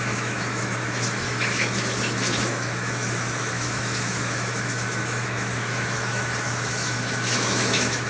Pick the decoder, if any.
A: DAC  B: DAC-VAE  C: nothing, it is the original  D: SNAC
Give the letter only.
B